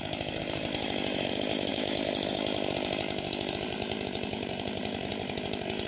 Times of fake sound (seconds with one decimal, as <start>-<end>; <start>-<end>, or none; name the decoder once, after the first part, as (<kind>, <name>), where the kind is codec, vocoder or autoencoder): 0.0-5.9 (vocoder, BigVGAN v2)